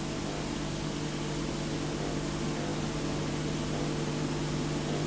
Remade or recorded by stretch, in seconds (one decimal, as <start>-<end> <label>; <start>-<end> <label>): 0.0-5.1 recorded